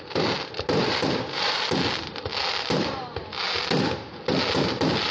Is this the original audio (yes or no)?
yes